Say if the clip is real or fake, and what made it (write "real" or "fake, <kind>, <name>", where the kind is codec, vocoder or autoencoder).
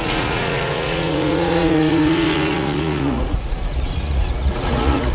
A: fake, vocoder, Vocos